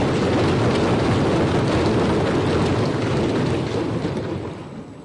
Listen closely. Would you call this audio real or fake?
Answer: real